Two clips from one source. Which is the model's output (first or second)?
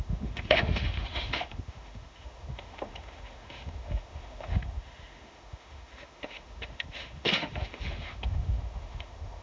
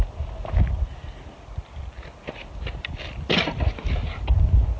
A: first